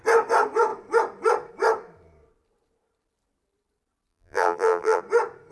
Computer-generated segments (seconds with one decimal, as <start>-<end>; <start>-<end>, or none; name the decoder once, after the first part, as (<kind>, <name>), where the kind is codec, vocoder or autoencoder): 4.1-5.0 (vocoder, BigVGAN v2)